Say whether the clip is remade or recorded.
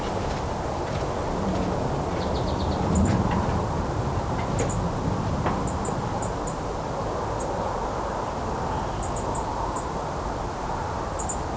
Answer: recorded